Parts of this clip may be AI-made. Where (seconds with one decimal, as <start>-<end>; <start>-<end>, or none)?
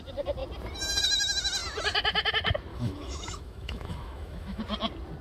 2.7-4.6